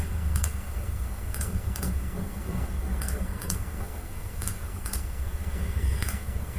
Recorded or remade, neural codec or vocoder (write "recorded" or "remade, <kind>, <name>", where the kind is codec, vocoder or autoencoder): remade, codec, SNAC